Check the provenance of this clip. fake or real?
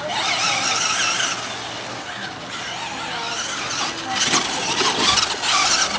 real